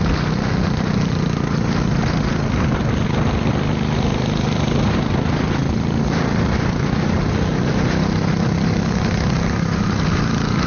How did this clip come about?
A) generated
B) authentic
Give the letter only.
B